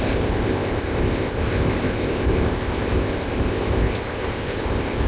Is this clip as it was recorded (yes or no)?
no